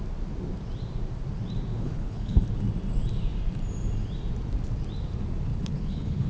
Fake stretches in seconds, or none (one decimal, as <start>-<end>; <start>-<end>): 1.7-2.4; 5.5-6.3